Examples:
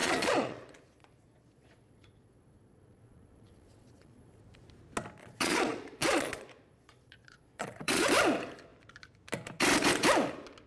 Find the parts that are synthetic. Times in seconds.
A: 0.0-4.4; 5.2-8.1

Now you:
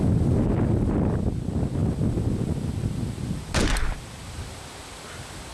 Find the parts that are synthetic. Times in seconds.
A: none

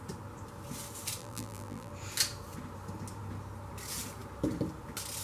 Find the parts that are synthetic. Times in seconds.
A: 1.2-1.9

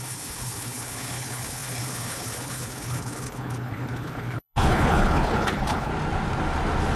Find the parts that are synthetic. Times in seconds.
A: 0.0-5.9

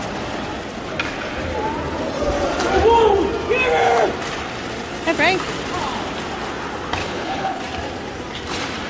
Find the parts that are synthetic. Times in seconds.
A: 7.0-7.6

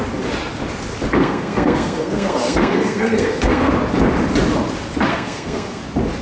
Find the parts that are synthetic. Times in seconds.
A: 1.2-3.7; 5.1-5.8

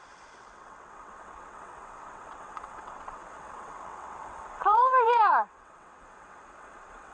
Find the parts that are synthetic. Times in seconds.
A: 0.0-7.1